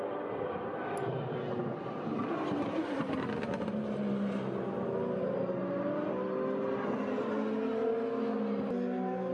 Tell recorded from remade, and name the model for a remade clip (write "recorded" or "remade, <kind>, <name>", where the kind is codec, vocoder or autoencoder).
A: recorded